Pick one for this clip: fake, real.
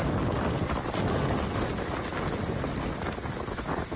real